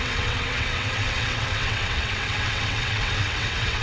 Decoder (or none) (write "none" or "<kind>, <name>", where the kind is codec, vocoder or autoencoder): vocoder, WaveNeXt